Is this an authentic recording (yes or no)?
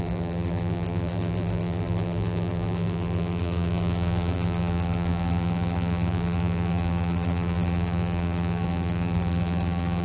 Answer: no